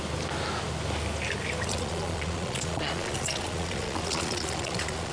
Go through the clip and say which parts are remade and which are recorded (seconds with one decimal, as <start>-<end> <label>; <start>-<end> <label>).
0.0-1.7 recorded; 1.7-5.1 remade